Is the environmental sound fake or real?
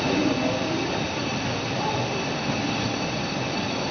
fake